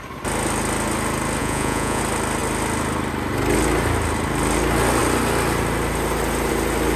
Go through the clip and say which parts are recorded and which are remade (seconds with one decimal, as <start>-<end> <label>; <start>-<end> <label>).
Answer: 0.0-1.4 recorded; 1.4-2.0 remade; 2.0-7.0 recorded